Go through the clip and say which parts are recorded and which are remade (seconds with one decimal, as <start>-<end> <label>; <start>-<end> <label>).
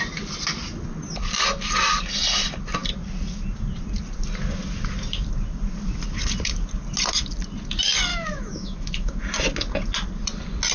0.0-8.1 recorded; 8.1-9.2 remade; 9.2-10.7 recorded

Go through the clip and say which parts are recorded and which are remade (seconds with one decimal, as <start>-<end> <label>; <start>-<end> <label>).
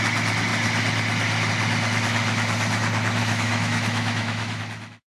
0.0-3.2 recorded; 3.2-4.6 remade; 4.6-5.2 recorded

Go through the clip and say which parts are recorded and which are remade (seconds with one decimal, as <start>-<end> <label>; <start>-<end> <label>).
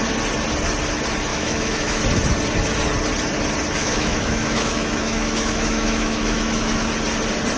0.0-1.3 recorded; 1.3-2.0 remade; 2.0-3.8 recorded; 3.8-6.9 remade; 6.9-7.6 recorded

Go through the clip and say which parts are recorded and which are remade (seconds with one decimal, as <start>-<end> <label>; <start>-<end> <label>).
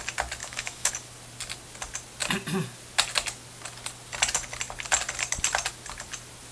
0.0-0.4 recorded; 0.4-0.9 remade; 0.9-6.5 recorded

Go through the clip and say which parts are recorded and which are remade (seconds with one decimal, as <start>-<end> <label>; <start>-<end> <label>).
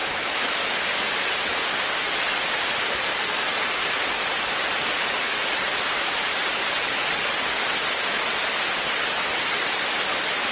0.0-0.5 remade; 0.5-10.5 recorded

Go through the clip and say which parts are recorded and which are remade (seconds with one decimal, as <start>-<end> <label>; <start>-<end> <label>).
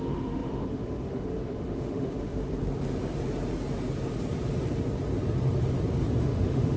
0.0-2.5 remade; 2.5-6.2 recorded; 6.2-6.8 remade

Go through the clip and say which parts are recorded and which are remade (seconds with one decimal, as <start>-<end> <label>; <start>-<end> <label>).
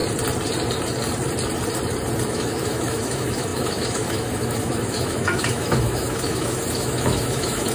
0.0-2.3 recorded; 2.3-7.7 remade